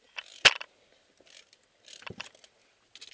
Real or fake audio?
real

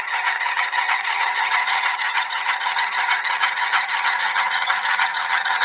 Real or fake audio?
fake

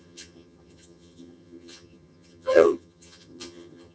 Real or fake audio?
fake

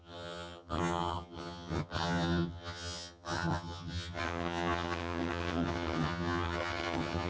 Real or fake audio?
fake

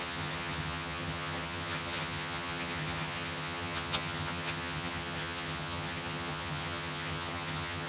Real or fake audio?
fake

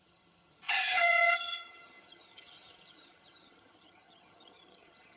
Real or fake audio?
fake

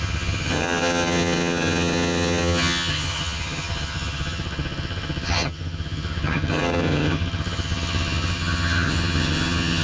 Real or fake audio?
fake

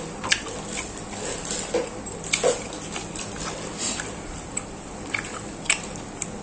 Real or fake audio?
real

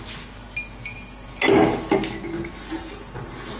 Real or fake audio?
real